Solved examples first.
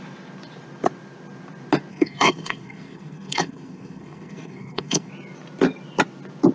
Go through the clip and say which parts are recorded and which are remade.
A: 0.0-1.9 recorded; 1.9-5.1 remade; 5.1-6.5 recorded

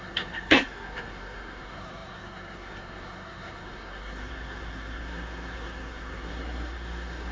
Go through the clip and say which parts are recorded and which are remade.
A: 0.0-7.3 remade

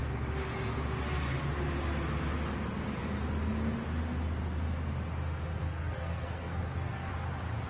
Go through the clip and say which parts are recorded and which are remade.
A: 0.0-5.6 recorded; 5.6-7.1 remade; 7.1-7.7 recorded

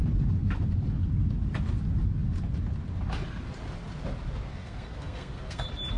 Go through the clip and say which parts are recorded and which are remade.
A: 0.0-4.5 recorded; 4.5-5.6 remade; 5.6-6.0 recorded

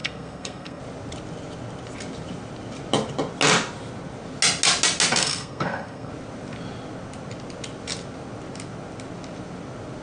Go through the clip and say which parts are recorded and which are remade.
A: 0.0-0.8 remade; 0.8-5.2 recorded; 5.2-6.1 remade; 6.1-10.0 recorded

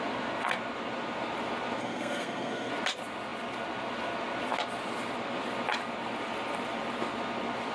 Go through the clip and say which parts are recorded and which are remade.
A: 0.0-1.8 recorded; 1.8-2.7 remade; 2.7-7.7 recorded